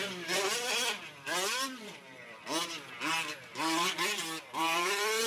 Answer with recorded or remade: remade